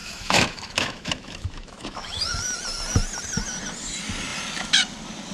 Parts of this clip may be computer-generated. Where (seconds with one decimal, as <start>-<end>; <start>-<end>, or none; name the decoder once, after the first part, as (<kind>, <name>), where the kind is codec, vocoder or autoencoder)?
0.0-2.2 (autoencoder, DAC-VAE)